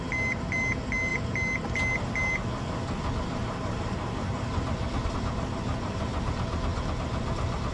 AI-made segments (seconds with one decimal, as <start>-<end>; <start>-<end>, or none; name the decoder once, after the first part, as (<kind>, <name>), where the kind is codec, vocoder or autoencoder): none